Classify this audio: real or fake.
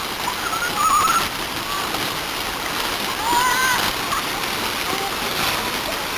real